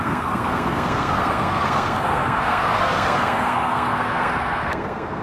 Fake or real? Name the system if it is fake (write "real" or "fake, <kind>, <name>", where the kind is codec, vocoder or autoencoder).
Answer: fake, codec, SNAC